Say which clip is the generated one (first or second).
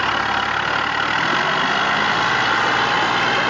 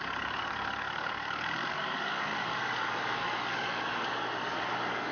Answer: second